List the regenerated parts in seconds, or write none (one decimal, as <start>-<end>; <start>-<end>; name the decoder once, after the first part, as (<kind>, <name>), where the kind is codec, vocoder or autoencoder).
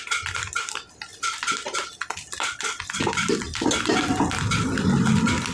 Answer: none